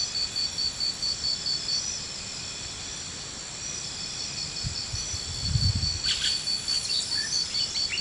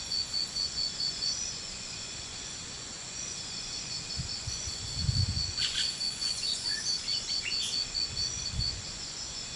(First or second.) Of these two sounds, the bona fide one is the first